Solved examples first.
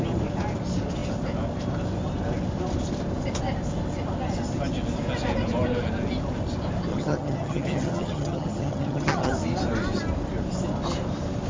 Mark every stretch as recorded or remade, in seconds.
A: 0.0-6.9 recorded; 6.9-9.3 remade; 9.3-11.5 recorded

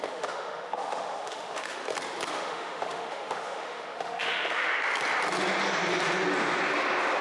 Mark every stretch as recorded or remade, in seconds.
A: 0.0-1.8 remade; 1.8-2.3 recorded; 2.3-4.7 remade; 4.7-7.2 recorded

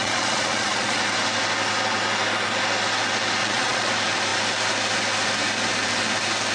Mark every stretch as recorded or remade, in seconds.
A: 0.0-1.0 remade; 1.0-3.4 recorded; 3.4-3.9 remade; 3.9-6.5 recorded

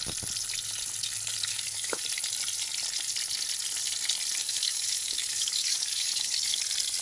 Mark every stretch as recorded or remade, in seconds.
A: 0.0-1.5 recorded; 1.5-2.0 remade; 2.0-4.4 recorded; 4.4-6.6 remade; 6.6-7.0 recorded

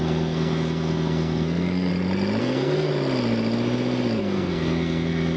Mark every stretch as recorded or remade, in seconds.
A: 0.0-1.9 remade; 1.9-2.4 recorded; 2.4-2.9 remade; 2.9-4.2 recorded; 4.2-5.4 remade

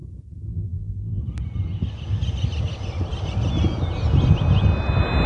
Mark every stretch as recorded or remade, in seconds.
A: 0.0-0.5 recorded; 0.5-1.2 remade; 1.2-5.3 recorded

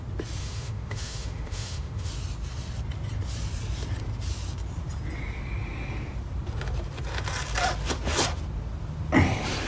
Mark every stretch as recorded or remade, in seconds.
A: 0.0-0.4 recorded; 0.4-2.1 remade; 2.1-9.7 recorded